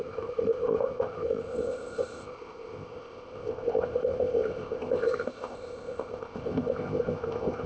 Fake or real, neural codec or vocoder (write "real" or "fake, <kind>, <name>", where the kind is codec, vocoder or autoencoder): fake, codec, ZipCodec